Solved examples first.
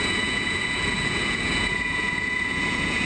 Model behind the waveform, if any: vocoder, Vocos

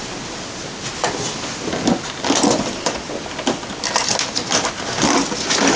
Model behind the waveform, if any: none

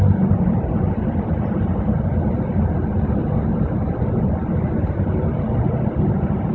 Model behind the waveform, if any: none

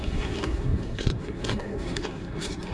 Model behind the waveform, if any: codec, SNAC